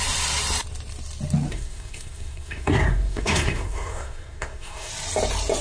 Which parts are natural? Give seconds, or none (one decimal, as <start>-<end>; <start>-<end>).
0.0-1.5; 4.9-5.6